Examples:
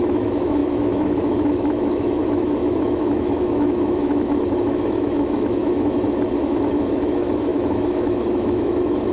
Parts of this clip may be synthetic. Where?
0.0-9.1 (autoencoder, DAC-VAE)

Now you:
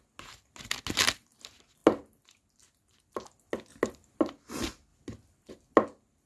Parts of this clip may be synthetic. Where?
none

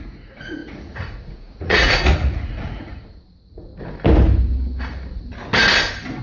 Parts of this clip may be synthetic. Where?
0.0-3.7 (vocoder, Vocos)

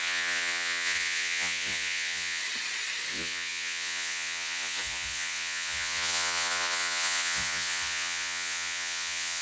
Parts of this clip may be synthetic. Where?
0.0-2.4 (vocoder, Vocos); 3.1-9.4

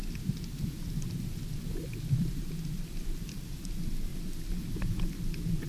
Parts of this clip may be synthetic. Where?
0.0-3.4 (vocoder, BigVGAN v2)

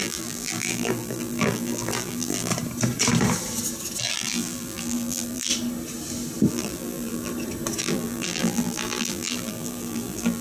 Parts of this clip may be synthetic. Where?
0.0-2.5 (vocoder, BigVGAN v2); 4.0-5.5; 6.5-7.3; 7.8-10.4

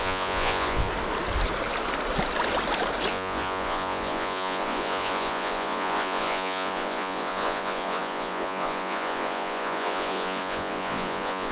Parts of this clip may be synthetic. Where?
0.0-0.9 (vocoder, Vocos); 3.1-11.5

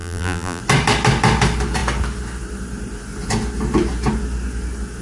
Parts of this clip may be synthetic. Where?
0.0-0.6 (vocoder, BigVGAN v2)